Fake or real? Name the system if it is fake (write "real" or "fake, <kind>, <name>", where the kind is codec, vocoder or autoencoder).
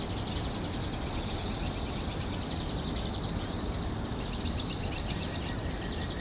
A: real